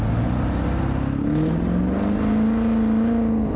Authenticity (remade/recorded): recorded